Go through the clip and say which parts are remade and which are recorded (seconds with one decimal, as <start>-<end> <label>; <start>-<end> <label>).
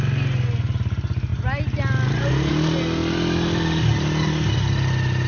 0.0-5.3 recorded